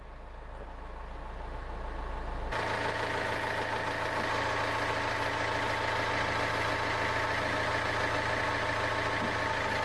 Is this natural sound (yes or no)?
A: yes